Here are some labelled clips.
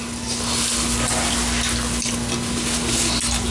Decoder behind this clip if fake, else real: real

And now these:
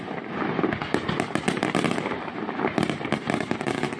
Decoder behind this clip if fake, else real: real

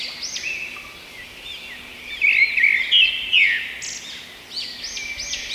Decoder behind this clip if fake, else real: real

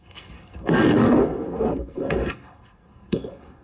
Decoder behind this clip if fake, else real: fake, codec, SNAC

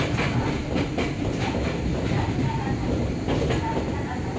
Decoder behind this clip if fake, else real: real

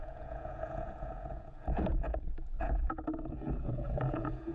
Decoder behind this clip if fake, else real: fake, vocoder, Vocos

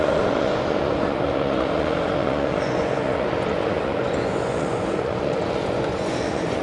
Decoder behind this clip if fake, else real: fake, vocoder, Vocos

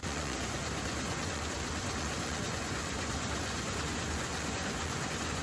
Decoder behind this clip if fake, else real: fake, vocoder, Vocos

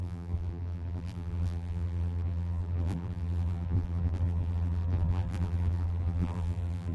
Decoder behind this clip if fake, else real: fake, vocoder, BigVGAN v2